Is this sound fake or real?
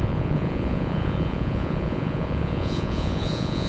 fake